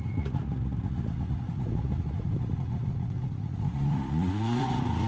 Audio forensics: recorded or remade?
remade